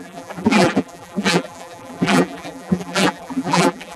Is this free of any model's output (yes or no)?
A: no